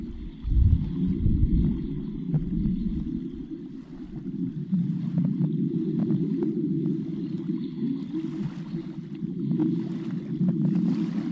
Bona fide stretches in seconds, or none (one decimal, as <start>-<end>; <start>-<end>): 0.0-6.0; 8.8-9.6; 10.3-11.3